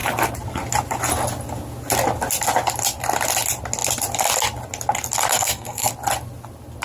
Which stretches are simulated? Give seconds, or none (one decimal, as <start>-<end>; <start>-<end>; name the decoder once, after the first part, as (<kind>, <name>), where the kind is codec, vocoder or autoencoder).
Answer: 5.3-5.9 (codec, SNAC)